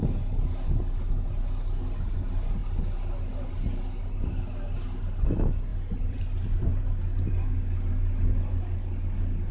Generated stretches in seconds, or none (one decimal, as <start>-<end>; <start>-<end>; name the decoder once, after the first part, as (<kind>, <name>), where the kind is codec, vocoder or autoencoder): 5.7-6.2 (vocoder, BigVGAN v2)